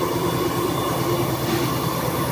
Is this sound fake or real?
real